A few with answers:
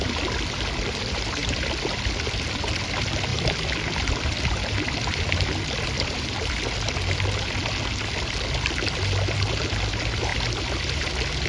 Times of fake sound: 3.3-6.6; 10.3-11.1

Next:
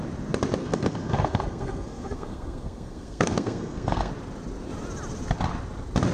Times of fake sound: 0.6-4.1